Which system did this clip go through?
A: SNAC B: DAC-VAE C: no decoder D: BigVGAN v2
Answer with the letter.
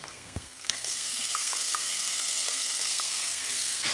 A